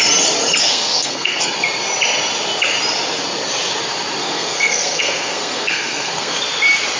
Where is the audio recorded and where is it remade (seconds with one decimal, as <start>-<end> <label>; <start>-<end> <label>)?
0.0-0.6 recorded; 0.6-1.4 remade; 1.4-4.2 recorded; 4.2-6.4 remade; 6.4-7.0 recorded